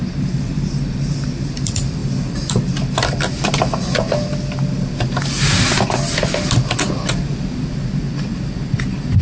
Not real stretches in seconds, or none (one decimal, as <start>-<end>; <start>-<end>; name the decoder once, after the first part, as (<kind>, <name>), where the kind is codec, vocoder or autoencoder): none